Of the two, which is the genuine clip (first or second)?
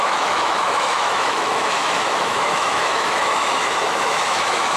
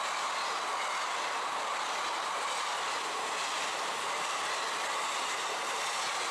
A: second